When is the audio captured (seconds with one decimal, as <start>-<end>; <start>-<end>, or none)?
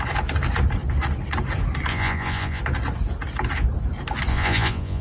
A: 0.0-1.9; 2.6-4.3